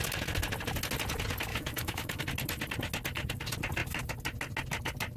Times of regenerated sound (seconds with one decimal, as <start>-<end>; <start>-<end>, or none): 1.5-2.2